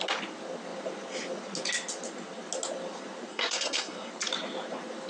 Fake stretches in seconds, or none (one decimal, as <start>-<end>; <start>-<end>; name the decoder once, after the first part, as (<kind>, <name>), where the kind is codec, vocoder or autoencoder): 3.3-4.1 (codec, SNAC)